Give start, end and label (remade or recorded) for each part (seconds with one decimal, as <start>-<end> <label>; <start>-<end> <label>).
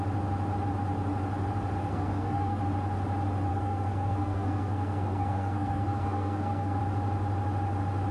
0.0-1.8 recorded; 1.8-2.6 remade; 2.6-3.5 recorded; 3.5-6.8 remade; 6.8-8.1 recorded